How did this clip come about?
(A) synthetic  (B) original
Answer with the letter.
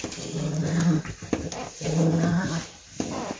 B